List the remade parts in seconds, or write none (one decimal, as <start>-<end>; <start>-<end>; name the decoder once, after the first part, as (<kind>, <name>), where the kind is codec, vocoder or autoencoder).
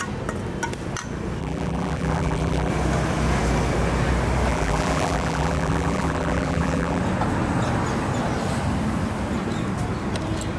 1.4-2.7 (vocoder, BigVGAN v2); 4.5-7.0